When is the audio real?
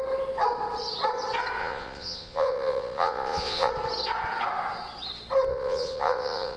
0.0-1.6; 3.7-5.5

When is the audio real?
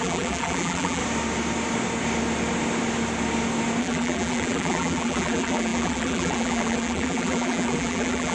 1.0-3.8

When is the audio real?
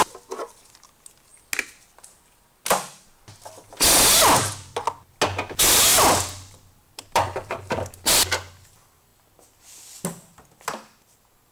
0.0-5.9; 8.5-11.5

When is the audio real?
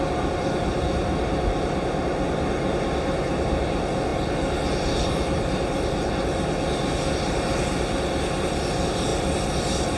0.0-10.0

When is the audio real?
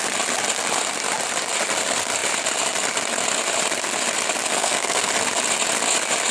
0.0-4.5; 5.1-6.3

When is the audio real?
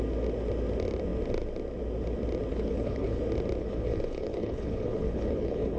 0.0-2.5; 3.2-3.6